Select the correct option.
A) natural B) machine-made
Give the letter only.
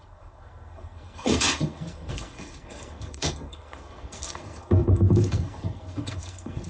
B